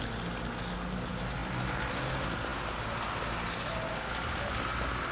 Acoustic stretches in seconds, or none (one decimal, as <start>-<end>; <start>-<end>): 0.0-5.1